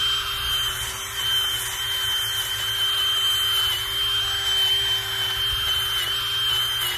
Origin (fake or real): real